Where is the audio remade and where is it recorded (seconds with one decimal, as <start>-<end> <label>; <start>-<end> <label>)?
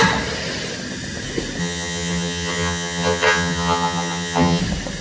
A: 0.0-1.6 recorded; 1.6-4.6 remade; 4.6-5.0 recorded